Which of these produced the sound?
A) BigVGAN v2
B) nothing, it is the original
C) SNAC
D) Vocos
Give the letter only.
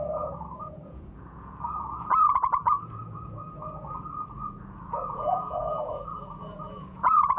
D